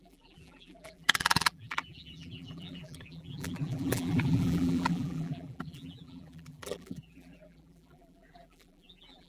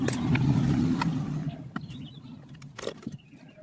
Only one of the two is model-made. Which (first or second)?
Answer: first